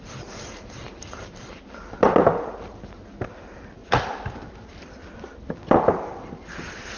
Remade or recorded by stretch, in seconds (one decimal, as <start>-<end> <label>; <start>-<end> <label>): 0.0-7.0 recorded